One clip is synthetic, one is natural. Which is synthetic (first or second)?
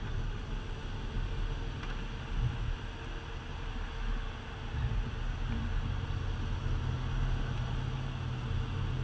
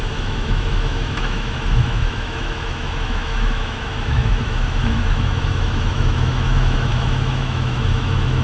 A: second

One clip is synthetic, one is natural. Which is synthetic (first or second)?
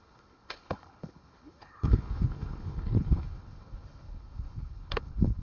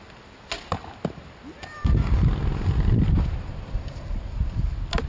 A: first